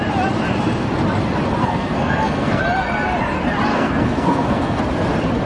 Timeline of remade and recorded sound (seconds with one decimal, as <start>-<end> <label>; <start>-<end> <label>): 0.0-1.6 recorded; 1.6-2.6 remade; 2.6-3.7 recorded; 3.7-4.8 remade; 4.8-5.4 recorded